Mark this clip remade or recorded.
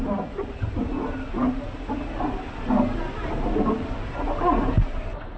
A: recorded